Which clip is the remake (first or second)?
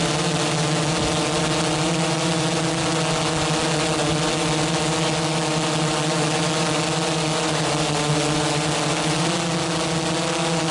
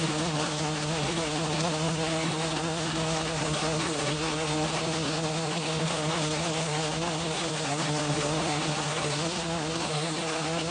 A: second